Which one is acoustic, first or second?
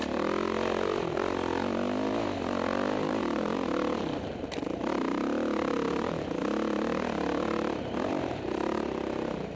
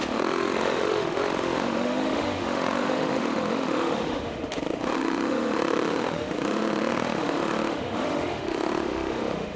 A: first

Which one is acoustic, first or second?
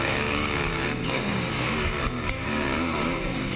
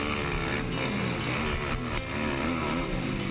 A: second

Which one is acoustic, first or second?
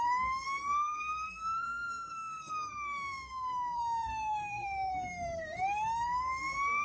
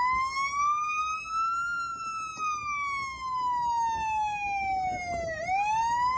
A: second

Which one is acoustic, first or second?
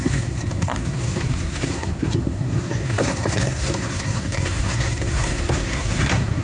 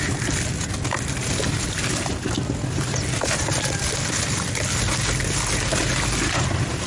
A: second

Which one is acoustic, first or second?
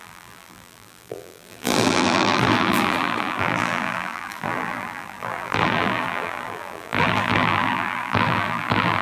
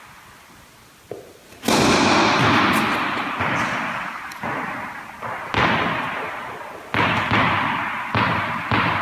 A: second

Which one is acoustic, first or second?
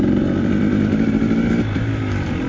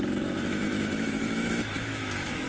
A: first